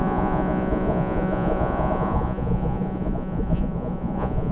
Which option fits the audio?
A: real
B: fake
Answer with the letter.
B